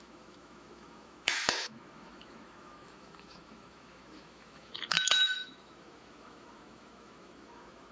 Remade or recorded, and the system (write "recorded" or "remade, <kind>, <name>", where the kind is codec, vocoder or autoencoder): remade, autoencoder, DAC-VAE